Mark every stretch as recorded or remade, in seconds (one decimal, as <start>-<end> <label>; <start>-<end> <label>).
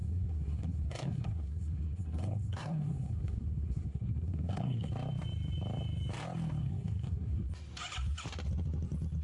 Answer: 0.0-4.9 remade; 4.9-6.6 recorded; 6.6-7.5 remade; 7.5-9.2 recorded